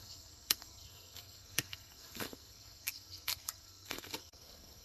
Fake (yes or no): yes